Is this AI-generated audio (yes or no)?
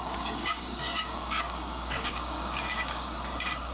yes